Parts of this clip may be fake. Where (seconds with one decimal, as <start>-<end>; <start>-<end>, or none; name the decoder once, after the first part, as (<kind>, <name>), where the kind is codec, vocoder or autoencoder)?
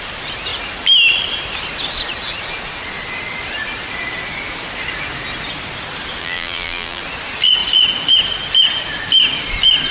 6.2-7.0 (vocoder, BigVGAN v2)